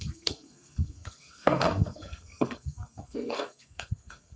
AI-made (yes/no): yes